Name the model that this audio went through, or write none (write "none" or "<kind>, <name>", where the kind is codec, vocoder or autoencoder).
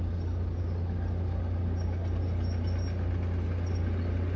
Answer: none